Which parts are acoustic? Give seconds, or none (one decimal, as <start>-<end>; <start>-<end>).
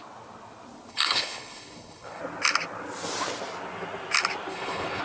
0.0-0.9; 2.2-4.5